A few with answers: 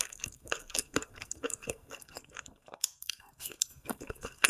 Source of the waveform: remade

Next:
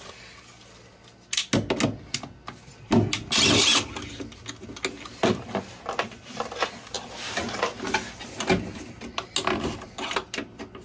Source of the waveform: recorded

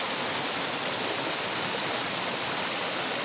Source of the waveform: recorded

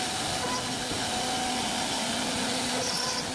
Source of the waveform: recorded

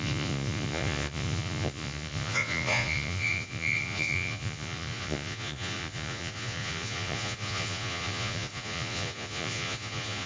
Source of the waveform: remade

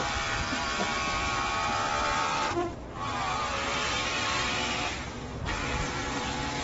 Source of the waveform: recorded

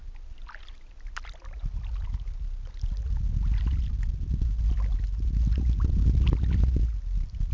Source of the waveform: recorded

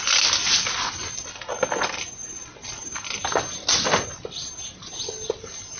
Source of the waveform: recorded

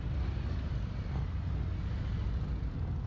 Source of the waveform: recorded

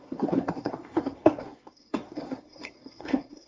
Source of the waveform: remade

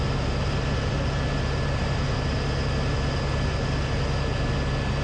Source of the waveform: recorded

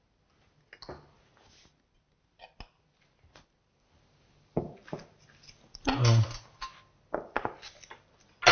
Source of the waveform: recorded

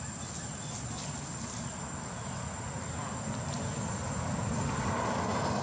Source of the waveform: recorded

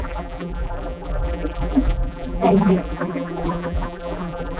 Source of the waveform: remade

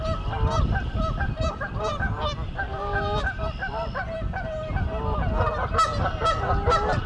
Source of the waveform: recorded